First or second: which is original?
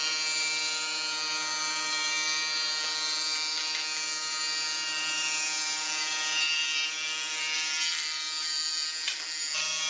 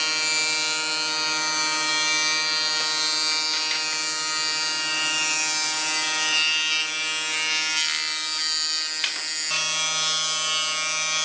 second